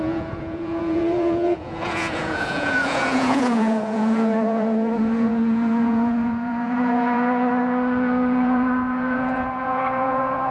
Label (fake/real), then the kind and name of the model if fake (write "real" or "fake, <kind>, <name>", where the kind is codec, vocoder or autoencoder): fake, vocoder, Vocos